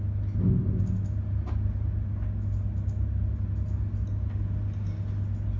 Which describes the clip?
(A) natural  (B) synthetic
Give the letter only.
A